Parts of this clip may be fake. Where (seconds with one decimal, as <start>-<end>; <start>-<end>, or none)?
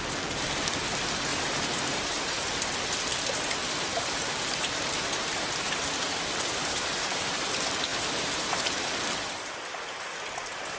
1.3-2.4; 3.6-7.4; 7.9-8.7